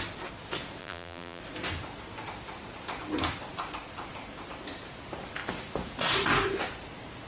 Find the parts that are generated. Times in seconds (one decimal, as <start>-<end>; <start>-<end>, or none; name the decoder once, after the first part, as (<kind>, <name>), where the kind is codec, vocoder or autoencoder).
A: 0.8-1.4 (vocoder, BigVGAN v2)